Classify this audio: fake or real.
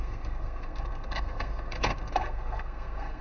fake